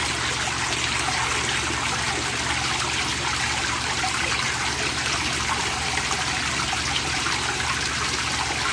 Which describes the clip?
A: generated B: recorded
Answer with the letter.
B